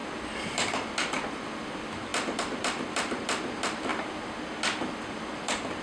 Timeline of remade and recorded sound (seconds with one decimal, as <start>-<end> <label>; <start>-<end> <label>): 0.0-3.9 remade; 3.9-4.8 recorded; 4.8-5.8 remade